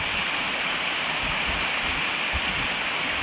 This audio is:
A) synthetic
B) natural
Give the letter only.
B